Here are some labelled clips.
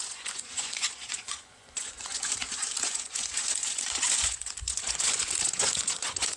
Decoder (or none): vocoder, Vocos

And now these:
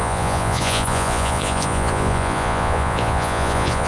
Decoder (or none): vocoder, Vocos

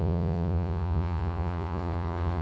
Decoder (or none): vocoder, Vocos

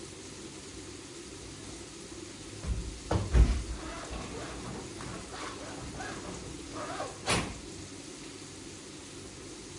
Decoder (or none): none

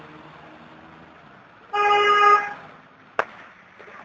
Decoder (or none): none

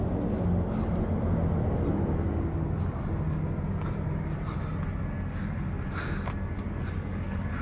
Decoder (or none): none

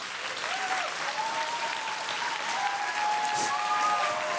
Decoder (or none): none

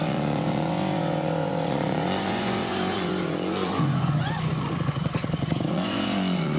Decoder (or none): vocoder, Vocos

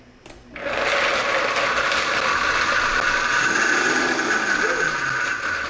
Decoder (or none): none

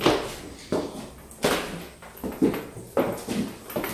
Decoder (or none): none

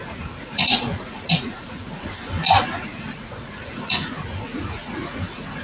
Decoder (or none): vocoder, Vocos